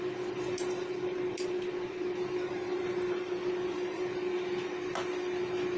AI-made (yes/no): no